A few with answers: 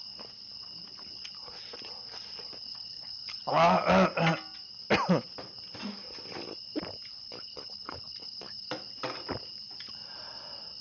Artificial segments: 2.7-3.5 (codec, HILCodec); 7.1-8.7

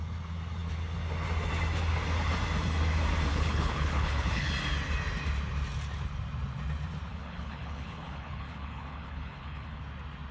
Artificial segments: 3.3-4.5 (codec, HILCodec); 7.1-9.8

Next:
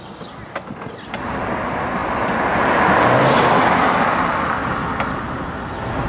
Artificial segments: none

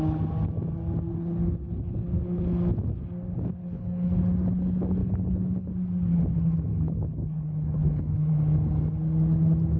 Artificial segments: 1.1-2.4 (codec, HILCodec); 3.6-4.2; 5.0-5.7; 6.7-8.3

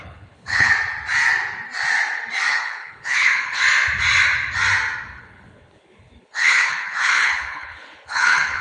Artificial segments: 0.0-0.7 (codec, HILCodec); 2.5-3.6; 5.2-8.6

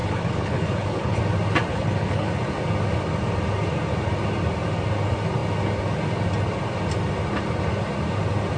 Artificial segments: 0.0-1.2 (codec, HILCodec); 1.7-2.3

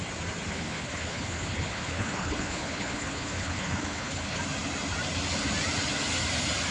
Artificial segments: 0.5-4.4 (codec, HILCodec)

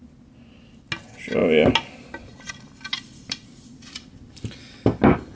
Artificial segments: none